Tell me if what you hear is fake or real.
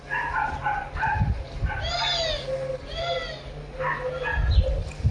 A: real